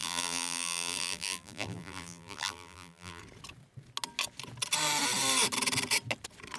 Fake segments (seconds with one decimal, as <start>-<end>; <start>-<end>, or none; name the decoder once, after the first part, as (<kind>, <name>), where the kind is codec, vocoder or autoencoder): 0.0-3.2 (vocoder, BigVGAN v2)